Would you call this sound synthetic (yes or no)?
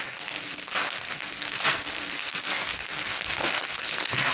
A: yes